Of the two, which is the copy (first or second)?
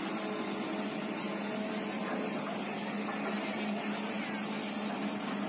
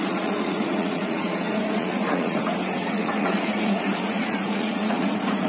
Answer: second